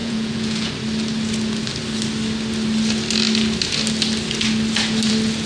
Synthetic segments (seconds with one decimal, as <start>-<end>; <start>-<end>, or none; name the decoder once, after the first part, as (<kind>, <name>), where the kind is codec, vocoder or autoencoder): 0.0-0.7 (vocoder, Vocos)